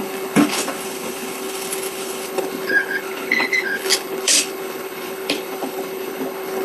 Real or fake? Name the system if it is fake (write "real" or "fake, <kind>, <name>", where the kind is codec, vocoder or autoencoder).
fake, codec, HILCodec